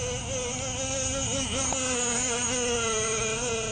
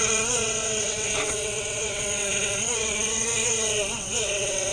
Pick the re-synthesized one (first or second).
second